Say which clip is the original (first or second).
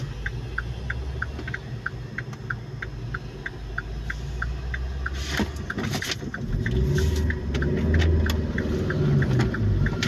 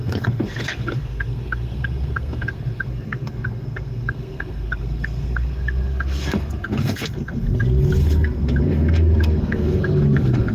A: first